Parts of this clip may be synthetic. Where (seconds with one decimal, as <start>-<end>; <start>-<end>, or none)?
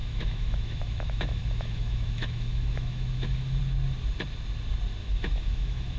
0.0-3.6; 5.0-6.0